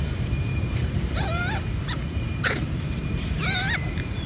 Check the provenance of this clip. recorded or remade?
remade